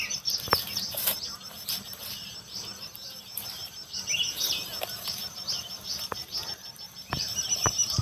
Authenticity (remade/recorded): remade